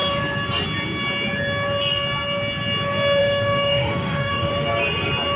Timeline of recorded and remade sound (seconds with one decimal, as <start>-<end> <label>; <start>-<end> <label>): 0.0-3.2 recorded; 3.2-4.5 remade; 4.5-5.4 recorded